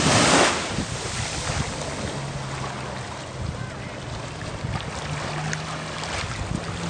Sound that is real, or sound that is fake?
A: real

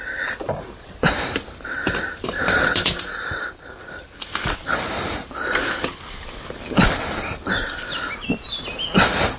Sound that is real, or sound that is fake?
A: fake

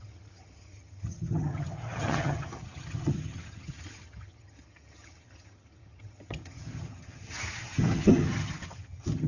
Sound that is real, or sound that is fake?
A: fake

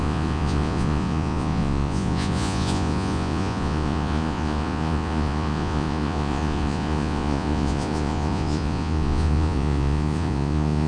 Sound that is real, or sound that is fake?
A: fake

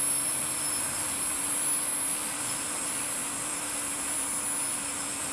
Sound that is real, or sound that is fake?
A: real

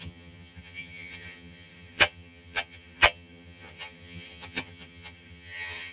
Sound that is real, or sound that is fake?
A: fake